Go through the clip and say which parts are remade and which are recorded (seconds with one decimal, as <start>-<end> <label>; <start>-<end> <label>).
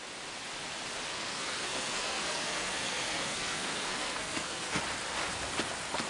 0.0-1.1 recorded; 1.1-4.8 remade; 4.8-6.1 recorded